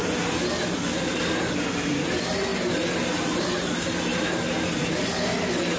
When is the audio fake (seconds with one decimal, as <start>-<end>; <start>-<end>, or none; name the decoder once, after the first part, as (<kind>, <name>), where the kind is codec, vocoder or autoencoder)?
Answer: none